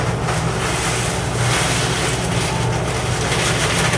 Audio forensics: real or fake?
real